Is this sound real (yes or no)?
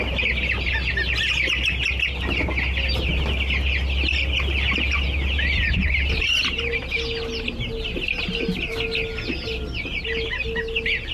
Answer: yes